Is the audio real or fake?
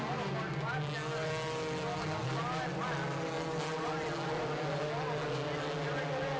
real